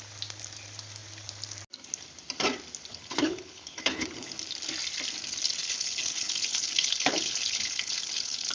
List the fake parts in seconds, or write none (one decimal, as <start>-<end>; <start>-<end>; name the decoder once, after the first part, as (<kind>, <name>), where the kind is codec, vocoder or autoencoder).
2.9-4.3 (codec, HILCodec); 5.6-8.5